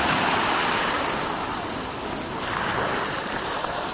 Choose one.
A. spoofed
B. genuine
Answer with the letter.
A